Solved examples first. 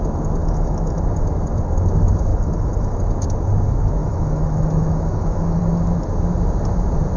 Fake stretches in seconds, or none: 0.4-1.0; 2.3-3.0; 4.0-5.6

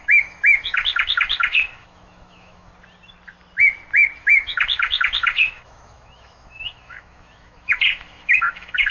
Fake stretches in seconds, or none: 0.0-2.7; 4.2-8.9

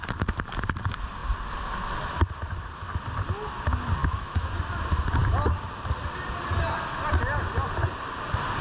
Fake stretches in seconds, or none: 4.0-4.5

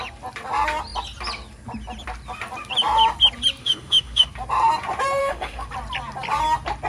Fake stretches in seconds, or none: 3.6-4.3; 5.2-5.7

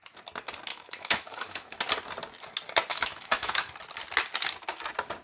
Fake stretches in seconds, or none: 0.7-1.8; 2.9-3.7

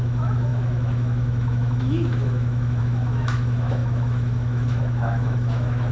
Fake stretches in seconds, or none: 0.0-5.9

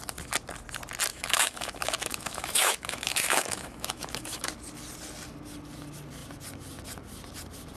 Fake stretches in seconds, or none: 1.1-4.5

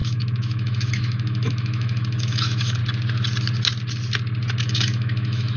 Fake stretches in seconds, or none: 0.0-2.8; 4.6-5.6